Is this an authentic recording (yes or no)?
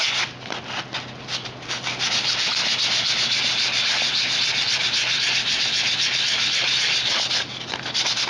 yes